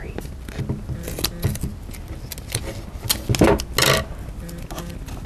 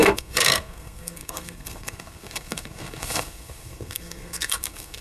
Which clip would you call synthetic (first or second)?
second